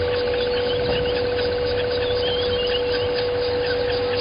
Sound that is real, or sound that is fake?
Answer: real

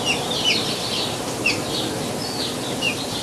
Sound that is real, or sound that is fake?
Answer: real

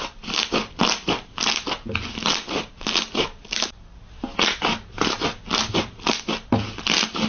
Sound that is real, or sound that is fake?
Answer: real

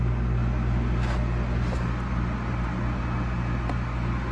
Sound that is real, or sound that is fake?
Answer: real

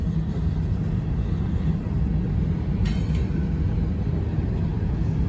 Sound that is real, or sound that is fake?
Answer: real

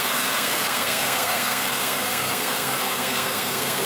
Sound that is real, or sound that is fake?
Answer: fake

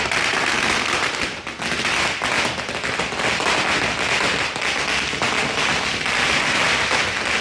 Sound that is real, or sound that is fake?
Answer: real